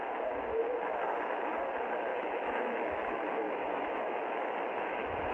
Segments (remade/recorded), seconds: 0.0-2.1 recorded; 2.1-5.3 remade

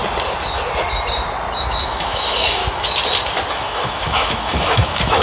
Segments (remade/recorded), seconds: 0.0-1.6 recorded; 1.6-2.6 remade; 2.6-3.5 recorded; 3.5-5.2 remade

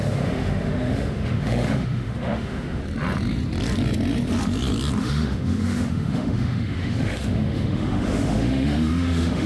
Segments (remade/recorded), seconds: 0.0-2.8 remade; 2.8-5.0 recorded; 5.0-9.5 remade

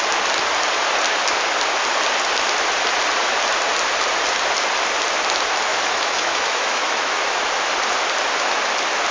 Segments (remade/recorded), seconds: 0.0-5.7 recorded; 5.7-7.2 remade; 7.2-9.1 recorded